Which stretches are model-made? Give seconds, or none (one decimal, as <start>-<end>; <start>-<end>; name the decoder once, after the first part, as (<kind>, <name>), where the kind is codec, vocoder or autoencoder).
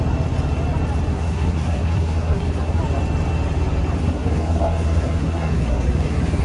1.1-2.8 (codec, SNAC); 4.0-6.4